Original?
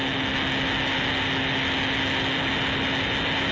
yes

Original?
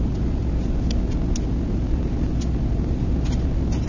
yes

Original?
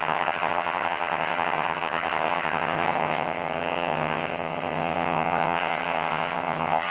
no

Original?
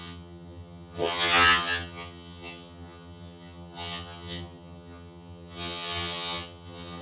no